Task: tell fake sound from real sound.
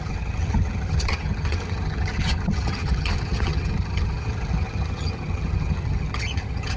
fake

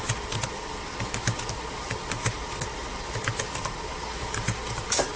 real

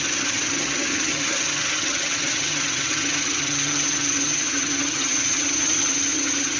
fake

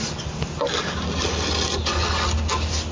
real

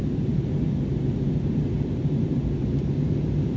real